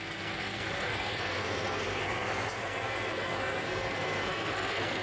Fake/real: fake